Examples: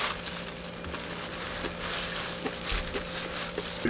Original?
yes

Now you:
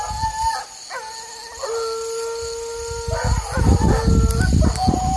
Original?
yes